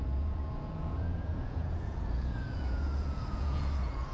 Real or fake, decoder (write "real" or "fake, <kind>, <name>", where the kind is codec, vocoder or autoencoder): fake, vocoder, Vocos